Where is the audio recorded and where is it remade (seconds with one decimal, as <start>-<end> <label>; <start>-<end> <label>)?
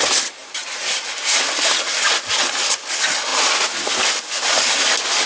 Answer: 0.0-5.3 recorded